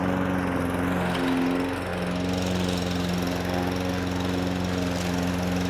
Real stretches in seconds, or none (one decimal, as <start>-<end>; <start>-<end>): 0.0-5.7